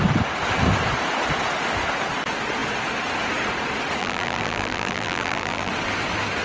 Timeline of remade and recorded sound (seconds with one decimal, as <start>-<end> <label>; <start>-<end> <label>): 0.0-4.0 recorded; 4.0-5.7 remade; 5.7-6.4 recorded